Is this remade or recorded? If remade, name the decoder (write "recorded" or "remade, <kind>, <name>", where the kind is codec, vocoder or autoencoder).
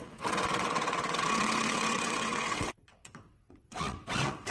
remade, vocoder, WaveNeXt